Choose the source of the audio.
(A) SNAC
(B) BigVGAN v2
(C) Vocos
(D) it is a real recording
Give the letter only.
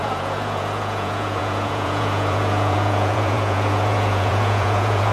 C